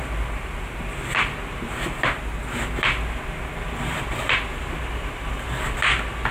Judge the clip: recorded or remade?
recorded